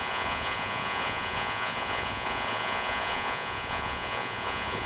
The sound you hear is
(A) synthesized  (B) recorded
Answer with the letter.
A